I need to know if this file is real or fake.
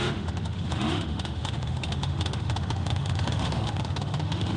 fake